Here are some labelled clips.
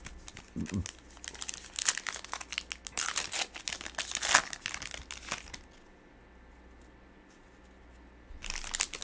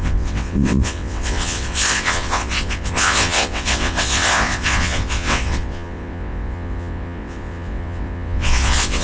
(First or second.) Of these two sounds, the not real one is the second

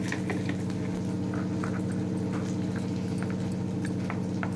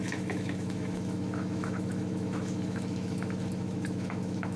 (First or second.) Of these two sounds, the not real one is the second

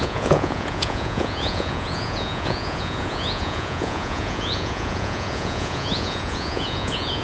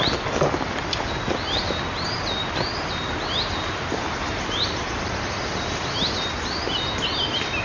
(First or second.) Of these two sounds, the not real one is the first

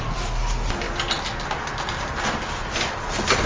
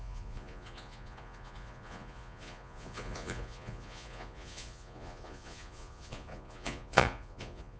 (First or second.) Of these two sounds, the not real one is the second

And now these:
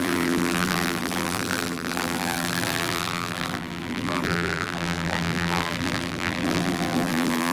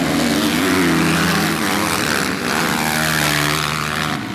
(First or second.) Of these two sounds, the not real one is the first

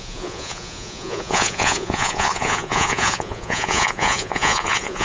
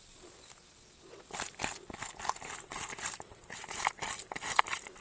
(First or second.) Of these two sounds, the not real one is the first